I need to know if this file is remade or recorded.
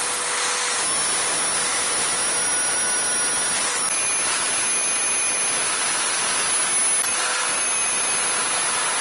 recorded